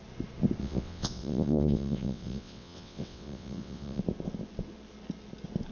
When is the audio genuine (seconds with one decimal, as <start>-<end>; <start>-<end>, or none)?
0.0-0.6; 4.0-5.7